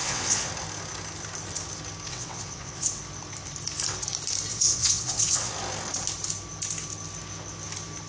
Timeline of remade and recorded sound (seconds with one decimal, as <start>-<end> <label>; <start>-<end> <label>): 0.0-0.5 remade; 0.5-2.1 recorded; 2.1-3.0 remade; 3.0-4.5 recorded; 4.5-5.5 remade; 5.5-8.1 recorded